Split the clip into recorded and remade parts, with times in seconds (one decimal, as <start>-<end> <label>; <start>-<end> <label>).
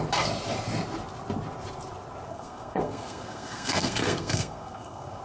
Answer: 0.0-2.3 recorded; 2.3-5.2 remade